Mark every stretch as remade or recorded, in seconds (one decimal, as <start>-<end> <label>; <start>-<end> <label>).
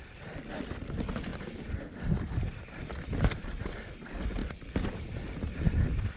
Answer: 0.0-6.2 recorded